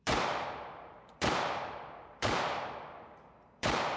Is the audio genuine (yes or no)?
no